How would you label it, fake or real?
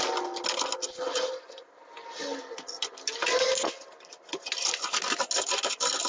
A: real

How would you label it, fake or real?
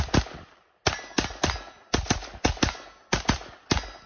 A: real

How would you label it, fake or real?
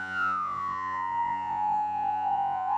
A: fake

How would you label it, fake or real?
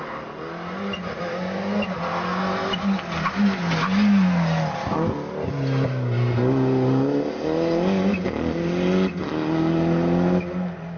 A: real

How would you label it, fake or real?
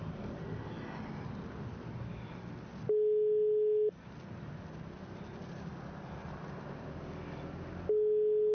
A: real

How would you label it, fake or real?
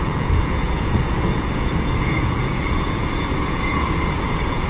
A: fake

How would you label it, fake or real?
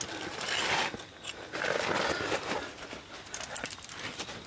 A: real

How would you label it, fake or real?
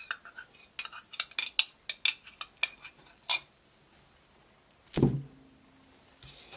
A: real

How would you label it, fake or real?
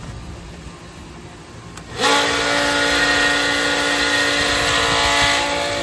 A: real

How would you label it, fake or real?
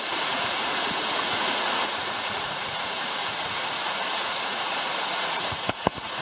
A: fake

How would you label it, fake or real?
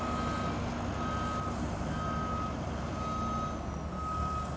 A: real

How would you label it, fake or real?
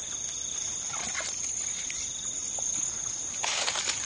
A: real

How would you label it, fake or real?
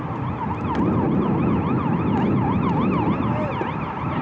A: real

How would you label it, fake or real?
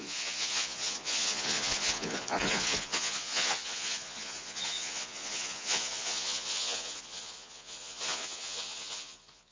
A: fake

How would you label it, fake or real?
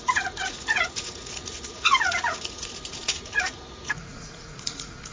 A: fake